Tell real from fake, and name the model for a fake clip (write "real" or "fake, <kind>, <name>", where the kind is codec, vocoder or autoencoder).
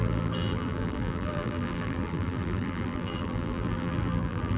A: fake, vocoder, BigVGAN v2